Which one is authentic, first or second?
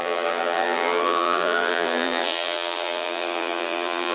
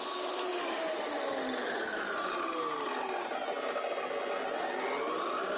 second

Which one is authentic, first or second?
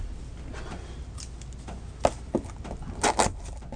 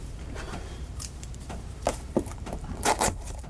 first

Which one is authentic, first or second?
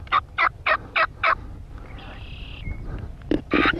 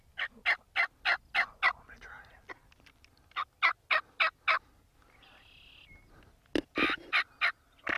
second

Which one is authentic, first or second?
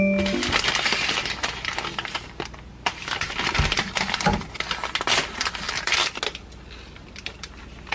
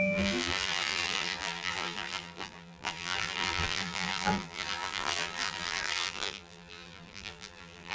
first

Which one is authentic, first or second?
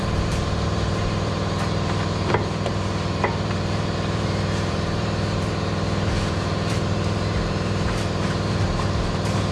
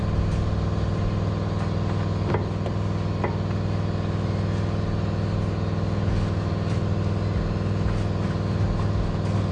second